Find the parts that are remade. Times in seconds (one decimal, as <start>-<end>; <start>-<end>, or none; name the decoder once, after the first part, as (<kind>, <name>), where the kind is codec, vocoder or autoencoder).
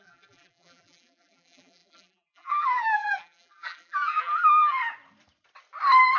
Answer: 0.0-4.8 (vocoder, BigVGAN v2)